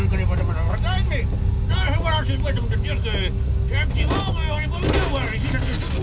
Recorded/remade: recorded